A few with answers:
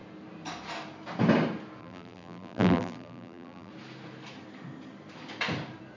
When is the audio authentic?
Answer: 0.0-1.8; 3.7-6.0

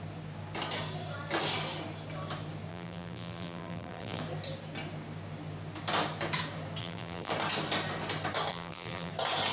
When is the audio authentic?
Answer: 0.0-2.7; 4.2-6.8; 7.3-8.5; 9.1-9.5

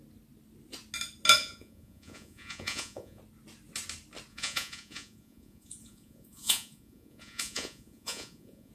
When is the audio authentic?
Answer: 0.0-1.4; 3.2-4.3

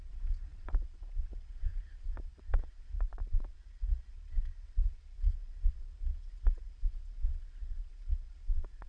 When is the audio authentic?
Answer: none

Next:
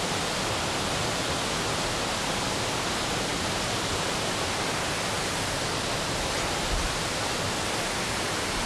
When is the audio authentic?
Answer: 0.0-8.7